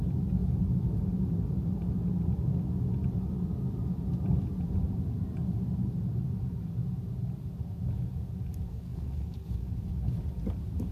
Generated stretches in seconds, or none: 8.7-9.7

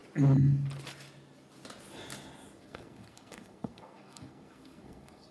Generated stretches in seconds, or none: 2.6-5.3

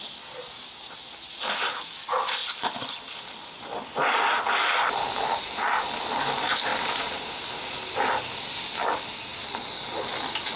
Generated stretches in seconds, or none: none

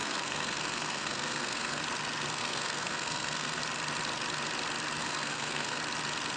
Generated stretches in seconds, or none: 0.0-1.8; 2.4-3.6; 5.0-5.8

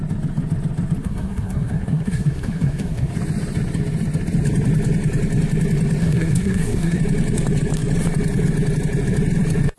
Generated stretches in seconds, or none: 1.0-3.1; 6.0-7.0